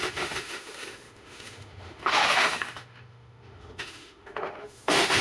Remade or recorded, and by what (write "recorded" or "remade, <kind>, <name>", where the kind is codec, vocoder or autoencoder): remade, autoencoder, DAC-VAE